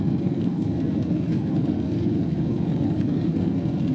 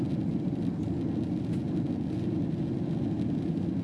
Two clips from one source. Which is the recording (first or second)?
second